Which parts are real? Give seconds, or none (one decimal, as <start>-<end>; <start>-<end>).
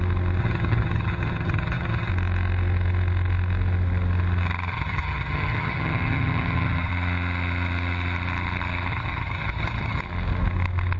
0.0-0.4; 2.1-4.7; 6.9-8.9; 10.0-11.0